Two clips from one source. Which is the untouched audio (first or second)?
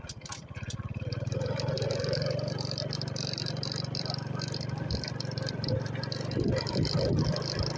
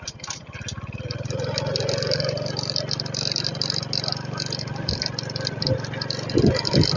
second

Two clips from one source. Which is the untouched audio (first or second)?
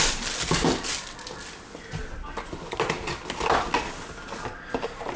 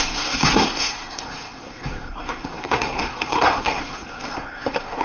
first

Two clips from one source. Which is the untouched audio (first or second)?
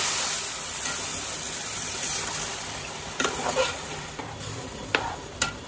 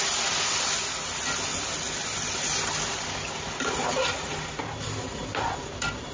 second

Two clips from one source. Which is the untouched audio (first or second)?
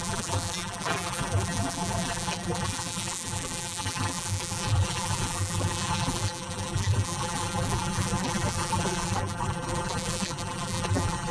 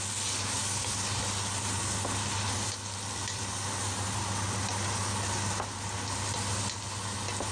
second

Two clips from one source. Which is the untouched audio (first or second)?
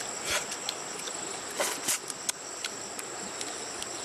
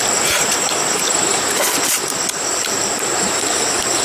first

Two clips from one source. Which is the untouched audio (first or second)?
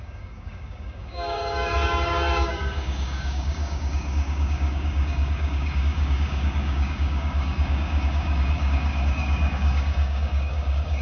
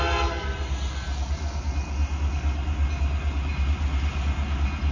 second